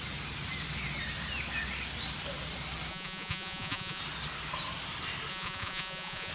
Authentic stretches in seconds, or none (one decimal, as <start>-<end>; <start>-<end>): 0.0-2.9; 4.0-5.3